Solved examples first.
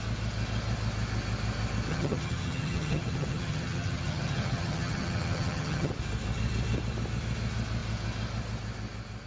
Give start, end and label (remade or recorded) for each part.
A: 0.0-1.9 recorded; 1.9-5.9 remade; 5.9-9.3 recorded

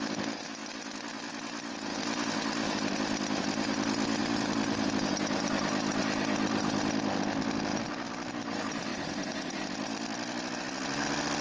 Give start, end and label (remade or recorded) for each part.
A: 0.0-8.9 recorded; 8.9-9.6 remade; 9.6-11.4 recorded

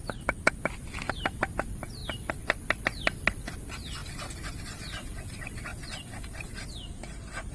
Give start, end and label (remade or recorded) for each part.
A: 0.0-7.5 recorded

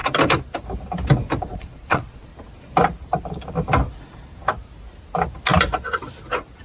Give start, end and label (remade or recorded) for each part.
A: 0.0-1.4 recorded; 1.4-2.3 remade; 2.3-6.6 recorded

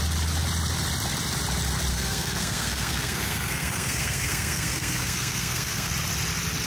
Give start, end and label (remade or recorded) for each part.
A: 0.0-1.9 recorded; 1.9-5.9 remade; 5.9-6.7 recorded

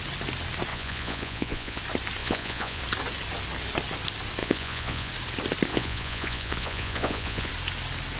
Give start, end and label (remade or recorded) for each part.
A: 0.0-0.7 recorded; 0.7-1.8 remade; 1.8-2.2 recorded; 2.2-2.8 remade; 2.8-4.4 recorded; 4.4-5.1 remade; 5.1-5.7 recorded; 5.7-7.5 remade; 7.5-8.2 recorded

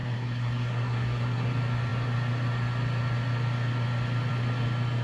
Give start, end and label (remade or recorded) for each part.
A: 0.0-1.5 remade; 1.5-5.0 recorded

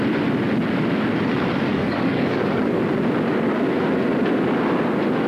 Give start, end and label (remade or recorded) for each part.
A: 0.0-1.7 recorded; 1.7-2.8 remade; 2.8-5.3 recorded